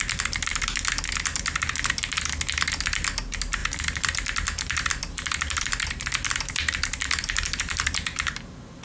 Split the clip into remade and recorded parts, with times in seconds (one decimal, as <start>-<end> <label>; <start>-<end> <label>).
0.0-3.6 recorded; 3.6-8.8 remade